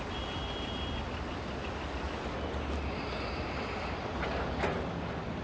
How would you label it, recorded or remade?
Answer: recorded